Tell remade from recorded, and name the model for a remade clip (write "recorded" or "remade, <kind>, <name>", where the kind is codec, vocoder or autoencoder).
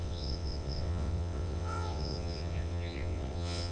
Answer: remade, vocoder, WaveNeXt